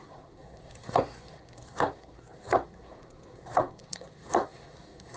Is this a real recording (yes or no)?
no